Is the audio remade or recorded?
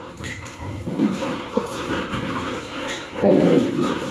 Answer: remade